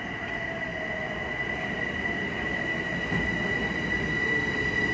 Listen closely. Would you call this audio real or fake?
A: real